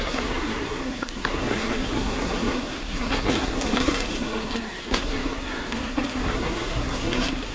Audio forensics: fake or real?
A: fake